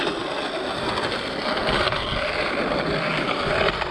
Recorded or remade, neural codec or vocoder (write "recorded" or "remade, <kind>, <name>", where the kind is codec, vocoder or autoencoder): recorded